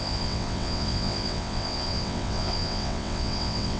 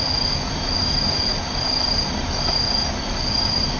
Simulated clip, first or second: first